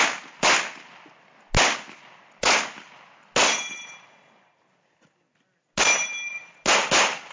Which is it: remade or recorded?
recorded